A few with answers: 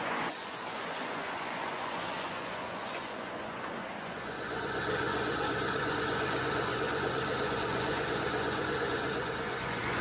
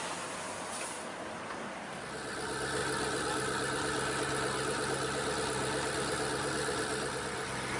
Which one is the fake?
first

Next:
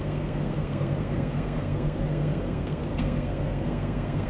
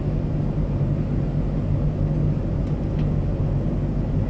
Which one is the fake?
first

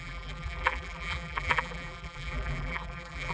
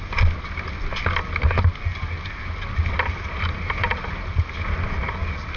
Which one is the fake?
first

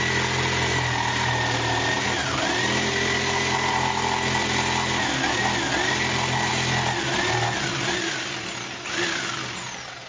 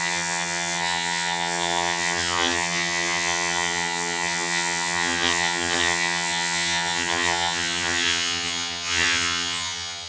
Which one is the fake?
second